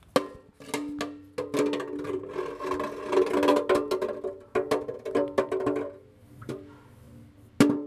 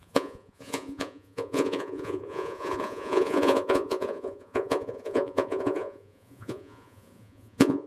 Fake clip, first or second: second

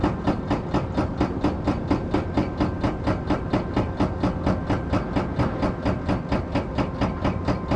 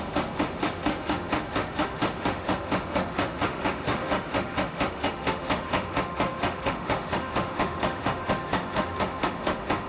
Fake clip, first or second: second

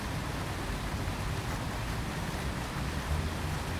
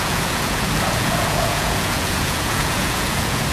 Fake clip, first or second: second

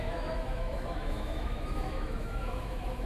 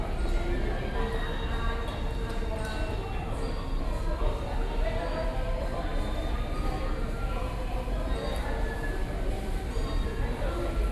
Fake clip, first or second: first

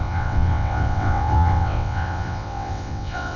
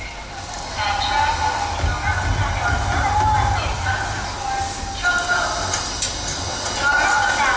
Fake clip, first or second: first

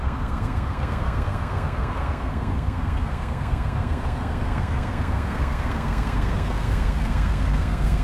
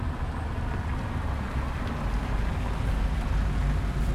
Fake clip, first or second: first